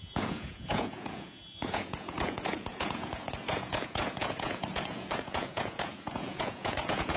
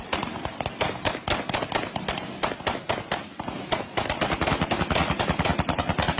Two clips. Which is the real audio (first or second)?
second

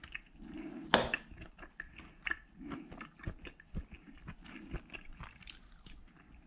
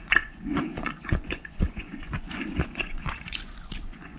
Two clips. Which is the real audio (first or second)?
first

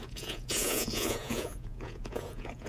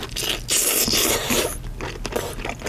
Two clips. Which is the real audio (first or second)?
second